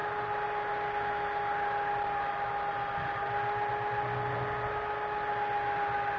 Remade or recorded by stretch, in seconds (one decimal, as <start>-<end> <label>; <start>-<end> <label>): 0.0-6.2 recorded